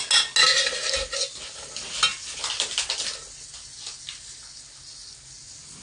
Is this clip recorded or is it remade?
recorded